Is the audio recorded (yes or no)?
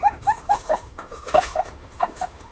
no